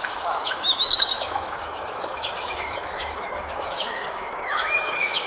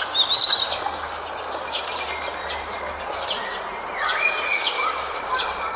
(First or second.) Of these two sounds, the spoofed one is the first